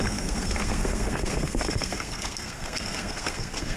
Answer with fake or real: fake